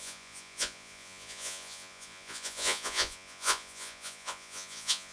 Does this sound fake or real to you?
fake